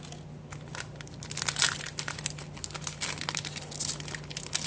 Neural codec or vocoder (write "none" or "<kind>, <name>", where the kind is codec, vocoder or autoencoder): none